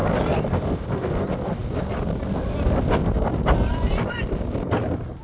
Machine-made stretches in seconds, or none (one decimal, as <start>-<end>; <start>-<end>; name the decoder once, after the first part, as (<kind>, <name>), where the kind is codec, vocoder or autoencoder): 0.0-1.6 (vocoder, BigVGAN v2); 3.7-5.2